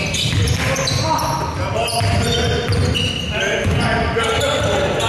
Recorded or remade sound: recorded